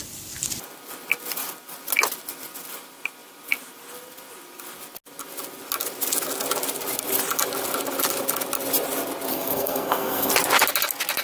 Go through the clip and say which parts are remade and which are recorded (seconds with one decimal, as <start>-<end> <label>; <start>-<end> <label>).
0.0-9.3 recorded; 9.3-10.3 remade; 10.3-11.2 recorded